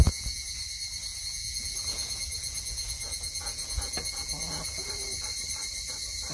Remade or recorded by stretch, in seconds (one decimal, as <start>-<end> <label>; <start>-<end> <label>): 0.0-0.6 remade; 0.6-1.1 recorded; 1.1-4.9 remade; 4.9-6.3 recorded